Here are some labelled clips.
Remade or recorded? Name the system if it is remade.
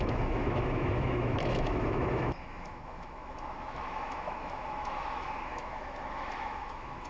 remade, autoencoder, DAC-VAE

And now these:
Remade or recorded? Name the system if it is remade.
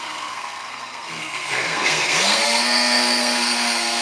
remade, codec, SNAC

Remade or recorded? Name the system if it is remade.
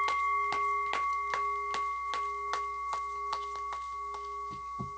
recorded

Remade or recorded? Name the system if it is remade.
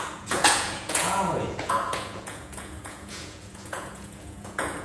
remade, vocoder, Vocos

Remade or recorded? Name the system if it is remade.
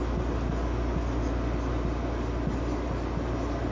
recorded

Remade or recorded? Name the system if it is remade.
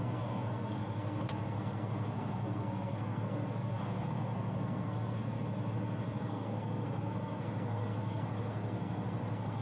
remade, codec, SNAC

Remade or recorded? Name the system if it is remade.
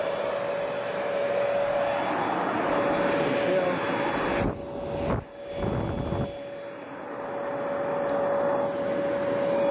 recorded